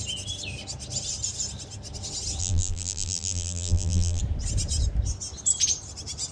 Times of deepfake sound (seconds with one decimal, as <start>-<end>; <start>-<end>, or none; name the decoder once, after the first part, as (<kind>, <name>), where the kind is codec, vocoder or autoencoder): 2.4-4.2 (vocoder, BigVGAN v2)